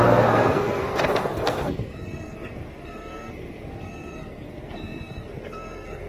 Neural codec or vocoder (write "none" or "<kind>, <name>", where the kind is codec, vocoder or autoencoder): codec, SNAC